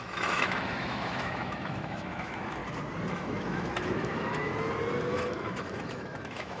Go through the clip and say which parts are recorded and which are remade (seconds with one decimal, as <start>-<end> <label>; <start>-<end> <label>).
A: 0.0-2.6 remade; 2.6-3.1 recorded; 3.1-4.5 remade; 4.5-5.1 recorded; 5.1-6.6 remade